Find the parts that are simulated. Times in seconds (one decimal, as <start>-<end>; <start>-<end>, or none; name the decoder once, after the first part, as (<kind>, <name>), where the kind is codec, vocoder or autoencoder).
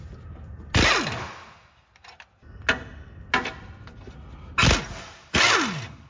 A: none